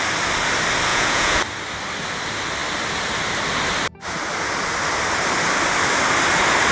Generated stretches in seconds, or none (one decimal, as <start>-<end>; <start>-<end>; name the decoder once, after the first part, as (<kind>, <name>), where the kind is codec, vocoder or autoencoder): 0.9-1.4 (vocoder, Vocos)